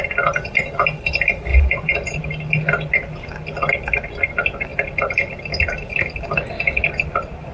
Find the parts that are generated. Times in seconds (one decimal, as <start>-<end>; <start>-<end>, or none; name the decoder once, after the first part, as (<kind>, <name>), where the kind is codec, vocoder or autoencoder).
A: 1.5-2.2 (vocoder, Vocos)